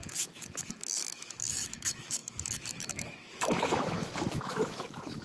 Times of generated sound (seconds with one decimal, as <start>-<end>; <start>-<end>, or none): 0.0-5.2

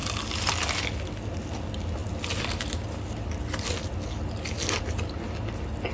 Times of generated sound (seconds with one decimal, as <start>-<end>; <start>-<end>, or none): none

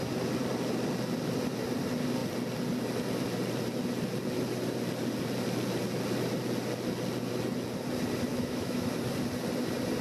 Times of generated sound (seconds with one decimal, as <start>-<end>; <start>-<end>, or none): 8.3-9.0